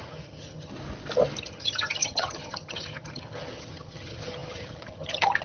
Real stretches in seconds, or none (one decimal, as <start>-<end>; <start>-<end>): 0.7-1.4